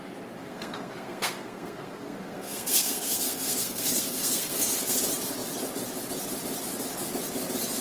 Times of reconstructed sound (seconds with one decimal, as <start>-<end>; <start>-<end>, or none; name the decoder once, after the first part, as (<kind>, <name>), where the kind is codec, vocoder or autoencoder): 0.4-5.0 (codec, SNAC)